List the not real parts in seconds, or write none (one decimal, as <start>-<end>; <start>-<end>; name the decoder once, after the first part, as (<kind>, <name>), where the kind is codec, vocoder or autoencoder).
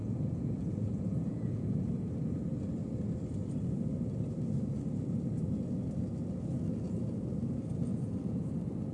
0.0-1.9 (vocoder, Vocos); 7.9-8.5